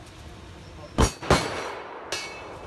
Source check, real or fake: real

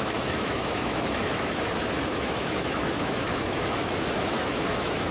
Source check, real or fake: fake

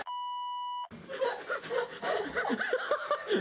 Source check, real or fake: real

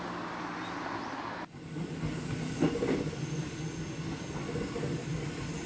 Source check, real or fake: real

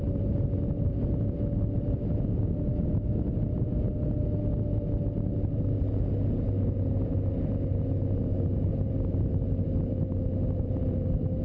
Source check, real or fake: real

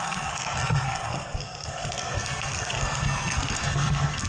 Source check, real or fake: fake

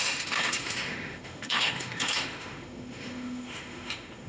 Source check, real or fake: fake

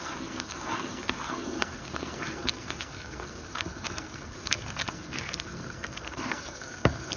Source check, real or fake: fake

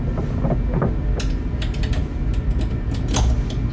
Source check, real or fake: real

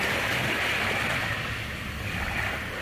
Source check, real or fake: real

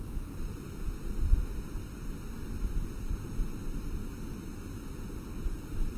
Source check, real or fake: real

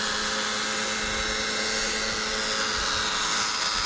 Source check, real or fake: real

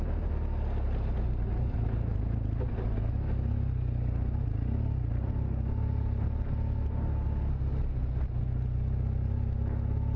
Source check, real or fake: real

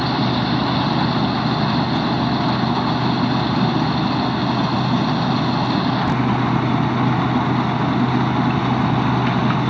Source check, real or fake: real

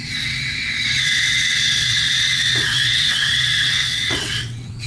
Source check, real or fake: fake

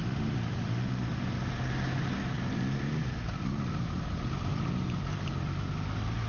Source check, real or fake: real